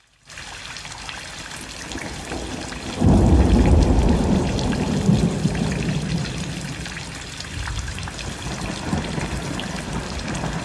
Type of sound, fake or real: real